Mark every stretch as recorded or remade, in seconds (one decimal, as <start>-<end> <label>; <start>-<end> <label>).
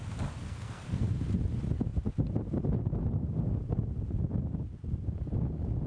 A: 0.0-0.4 recorded; 0.4-1.1 remade; 1.1-5.9 recorded